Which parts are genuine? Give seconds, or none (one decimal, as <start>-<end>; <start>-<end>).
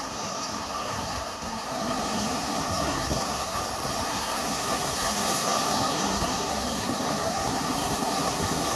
3.6-4.1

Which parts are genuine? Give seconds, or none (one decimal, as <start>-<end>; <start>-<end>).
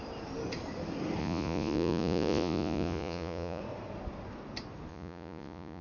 0.0-1.2; 3.6-4.9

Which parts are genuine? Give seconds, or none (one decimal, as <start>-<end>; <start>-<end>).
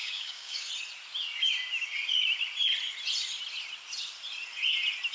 0.7-5.1